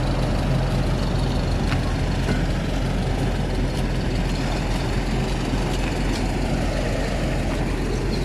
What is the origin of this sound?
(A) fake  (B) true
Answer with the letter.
B